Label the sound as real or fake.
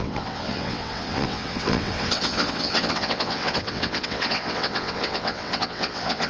fake